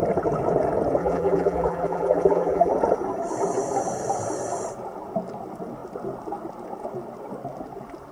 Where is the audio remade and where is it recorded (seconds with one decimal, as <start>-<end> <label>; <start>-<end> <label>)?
0.0-1.0 recorded; 1.0-2.7 remade; 2.7-8.1 recorded